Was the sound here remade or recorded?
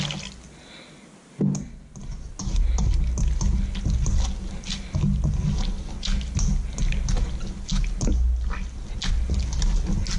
recorded